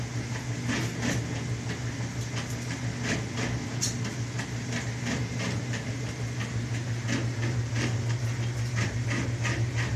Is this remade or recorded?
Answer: recorded